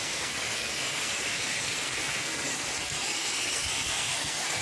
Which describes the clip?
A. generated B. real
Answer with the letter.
A